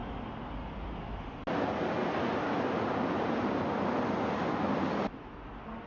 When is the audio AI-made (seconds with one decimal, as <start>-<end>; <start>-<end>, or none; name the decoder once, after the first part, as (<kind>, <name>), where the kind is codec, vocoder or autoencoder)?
none